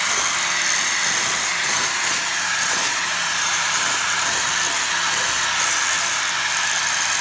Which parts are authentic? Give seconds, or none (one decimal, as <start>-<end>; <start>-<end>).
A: 0.0-1.6; 4.5-7.2